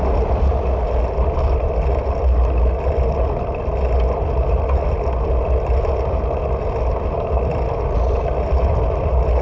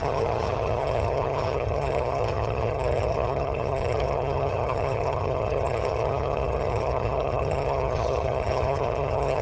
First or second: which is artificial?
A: second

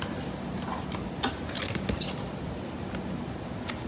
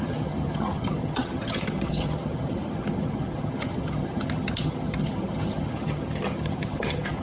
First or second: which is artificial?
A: second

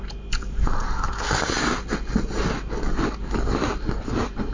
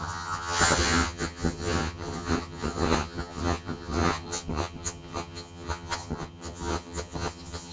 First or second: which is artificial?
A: second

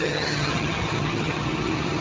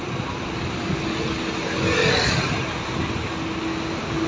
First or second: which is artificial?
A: first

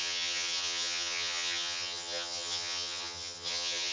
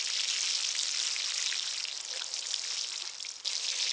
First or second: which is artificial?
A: first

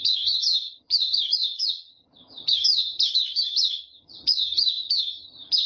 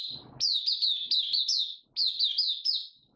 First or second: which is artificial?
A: first